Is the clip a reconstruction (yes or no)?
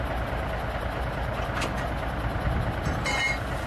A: no